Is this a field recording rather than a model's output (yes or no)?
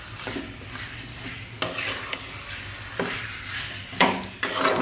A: yes